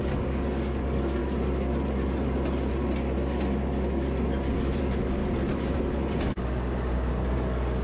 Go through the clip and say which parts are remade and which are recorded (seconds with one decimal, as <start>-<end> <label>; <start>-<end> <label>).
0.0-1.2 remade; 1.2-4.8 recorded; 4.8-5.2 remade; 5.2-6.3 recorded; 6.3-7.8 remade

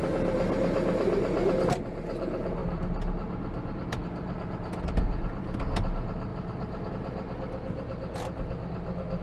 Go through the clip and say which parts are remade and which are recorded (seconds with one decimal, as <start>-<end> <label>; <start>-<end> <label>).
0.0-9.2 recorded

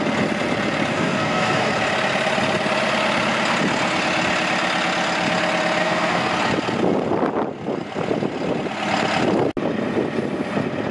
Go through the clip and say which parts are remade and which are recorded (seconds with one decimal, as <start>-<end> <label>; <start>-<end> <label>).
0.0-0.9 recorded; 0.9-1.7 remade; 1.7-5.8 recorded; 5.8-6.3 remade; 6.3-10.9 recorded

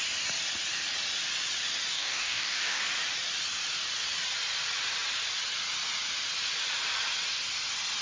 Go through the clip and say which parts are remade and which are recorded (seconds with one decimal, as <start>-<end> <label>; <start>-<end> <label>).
0.0-1.9 recorded; 1.9-2.8 remade; 2.8-8.0 recorded

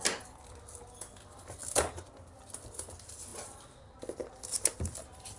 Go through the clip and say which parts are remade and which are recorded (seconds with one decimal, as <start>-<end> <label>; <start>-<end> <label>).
0.0-5.4 recorded